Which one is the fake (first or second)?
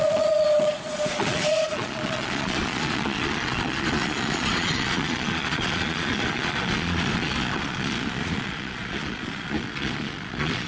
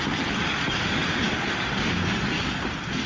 first